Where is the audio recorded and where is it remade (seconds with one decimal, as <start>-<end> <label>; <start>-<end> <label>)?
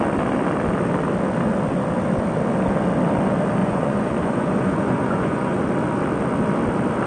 0.0-3.6 recorded; 3.6-5.6 remade; 5.6-7.1 recorded